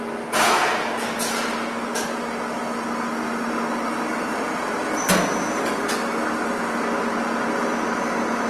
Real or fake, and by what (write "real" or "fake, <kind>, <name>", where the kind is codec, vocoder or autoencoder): real